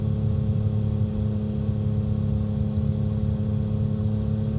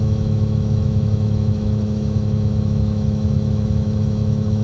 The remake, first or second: second